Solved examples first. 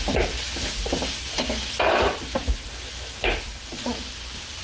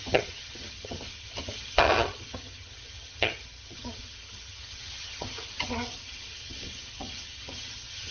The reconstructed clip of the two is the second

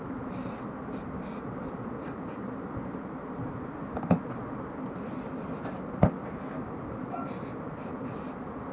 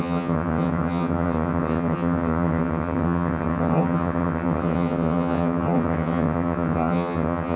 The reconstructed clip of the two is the second